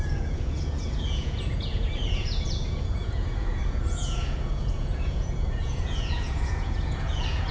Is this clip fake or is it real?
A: fake